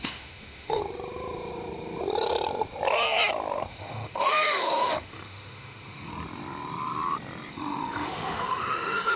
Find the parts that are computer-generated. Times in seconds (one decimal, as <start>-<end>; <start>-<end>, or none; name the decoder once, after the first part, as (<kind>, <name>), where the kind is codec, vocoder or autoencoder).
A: 0.0-0.8 (autoencoder, DAC-VAE); 3.7-6.1; 7.5-9.2